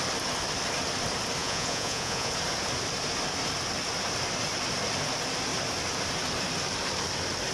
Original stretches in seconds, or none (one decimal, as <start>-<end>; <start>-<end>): 0.0-1.4; 2.3-7.5